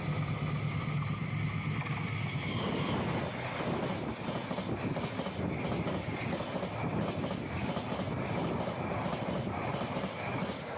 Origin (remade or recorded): recorded